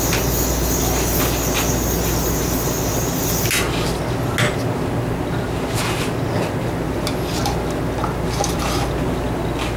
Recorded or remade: recorded